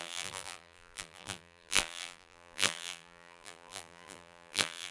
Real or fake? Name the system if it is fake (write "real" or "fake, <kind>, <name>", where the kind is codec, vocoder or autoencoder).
fake, vocoder, BigVGAN v2